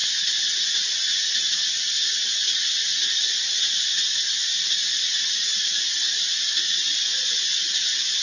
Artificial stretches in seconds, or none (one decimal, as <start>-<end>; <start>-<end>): 0.0-0.8